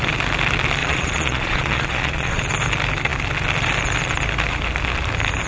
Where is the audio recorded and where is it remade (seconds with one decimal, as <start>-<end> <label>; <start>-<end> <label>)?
0.0-0.8 recorded; 0.8-2.4 remade; 2.4-5.5 recorded